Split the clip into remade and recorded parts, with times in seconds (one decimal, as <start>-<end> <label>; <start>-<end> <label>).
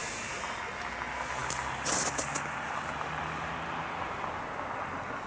0.0-5.3 recorded